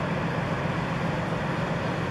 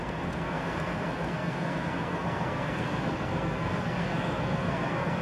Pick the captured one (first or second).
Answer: first